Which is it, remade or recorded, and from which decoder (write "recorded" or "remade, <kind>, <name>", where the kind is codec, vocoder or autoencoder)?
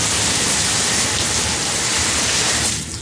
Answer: recorded